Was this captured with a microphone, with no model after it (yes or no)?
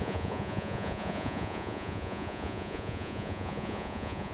no